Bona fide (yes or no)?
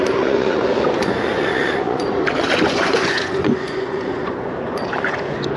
no